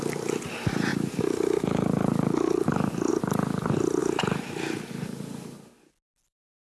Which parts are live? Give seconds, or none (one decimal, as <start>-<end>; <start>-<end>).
0.0-6.6